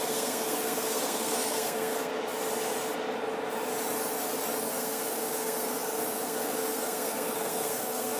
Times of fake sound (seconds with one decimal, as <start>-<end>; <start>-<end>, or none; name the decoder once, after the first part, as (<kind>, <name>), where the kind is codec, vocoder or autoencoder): 0.0-2.1 (codec, SNAC); 4.7-8.2